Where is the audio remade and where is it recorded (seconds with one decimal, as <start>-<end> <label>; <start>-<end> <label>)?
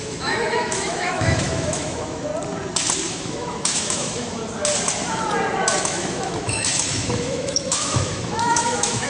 0.0-2.3 remade; 2.3-3.1 recorded; 3.1-4.4 remade; 4.4-5.8 recorded; 5.8-9.1 remade